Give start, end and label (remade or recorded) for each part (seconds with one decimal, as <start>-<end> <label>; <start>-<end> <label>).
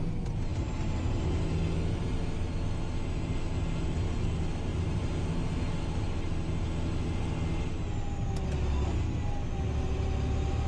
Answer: 0.0-0.5 recorded; 0.5-1.4 remade; 1.4-4.7 recorded; 4.7-5.2 remade; 5.2-10.7 recorded